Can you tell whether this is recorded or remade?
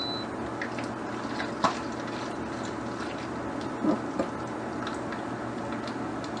recorded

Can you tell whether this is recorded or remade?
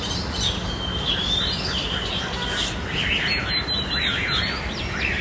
recorded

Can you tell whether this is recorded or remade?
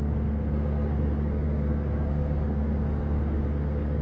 remade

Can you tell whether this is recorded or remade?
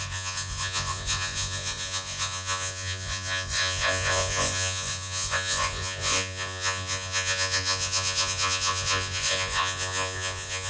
remade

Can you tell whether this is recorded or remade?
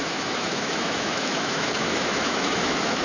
remade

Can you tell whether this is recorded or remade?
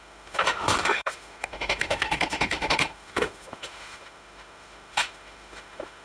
remade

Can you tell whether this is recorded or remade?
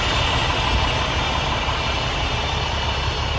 recorded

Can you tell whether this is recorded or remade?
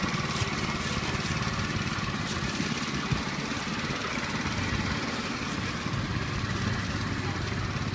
recorded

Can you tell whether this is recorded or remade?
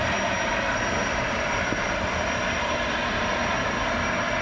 recorded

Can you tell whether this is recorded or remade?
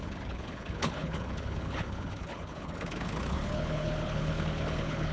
remade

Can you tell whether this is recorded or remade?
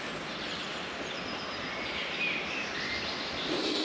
recorded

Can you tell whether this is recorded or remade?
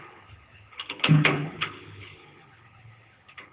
remade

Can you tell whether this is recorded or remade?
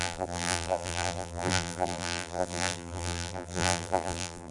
remade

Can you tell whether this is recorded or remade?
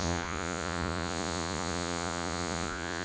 remade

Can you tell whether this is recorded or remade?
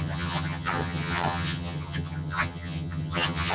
remade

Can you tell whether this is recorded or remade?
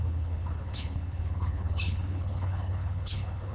remade